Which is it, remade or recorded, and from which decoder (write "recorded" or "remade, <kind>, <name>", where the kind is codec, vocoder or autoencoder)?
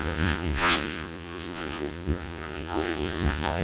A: remade, vocoder, Vocos